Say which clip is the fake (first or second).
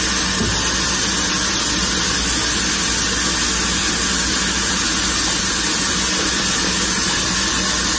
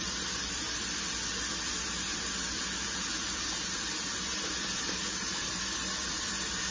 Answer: second